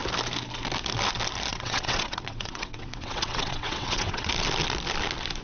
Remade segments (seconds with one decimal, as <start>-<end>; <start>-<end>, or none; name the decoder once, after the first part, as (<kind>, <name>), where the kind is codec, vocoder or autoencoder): 1.5-4.3 (vocoder, WaveNeXt)